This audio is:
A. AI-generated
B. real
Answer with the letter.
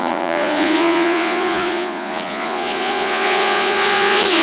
A